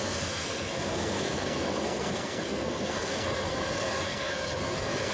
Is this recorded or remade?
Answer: remade